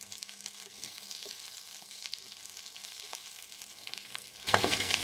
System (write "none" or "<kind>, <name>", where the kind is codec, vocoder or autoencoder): codec, SNAC